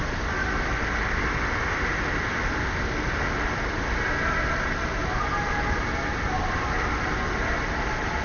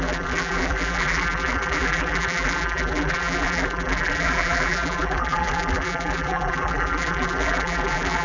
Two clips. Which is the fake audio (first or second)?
second